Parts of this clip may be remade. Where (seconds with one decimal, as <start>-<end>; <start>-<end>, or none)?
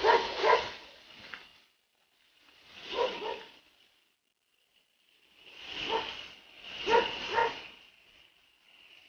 1.5-5.6